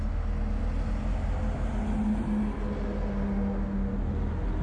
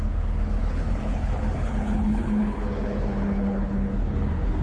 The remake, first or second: second